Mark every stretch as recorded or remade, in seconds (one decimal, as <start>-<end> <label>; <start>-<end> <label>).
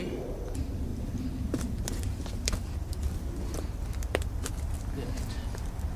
0.0-6.0 recorded